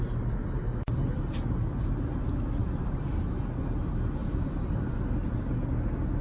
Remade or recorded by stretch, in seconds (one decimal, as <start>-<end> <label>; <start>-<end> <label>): 0.0-2.6 recorded; 2.6-3.1 remade; 3.1-4.2 recorded; 4.2-5.0 remade; 5.0-6.2 recorded